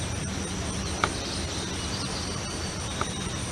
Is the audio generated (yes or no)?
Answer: no